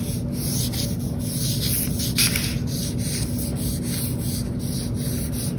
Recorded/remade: recorded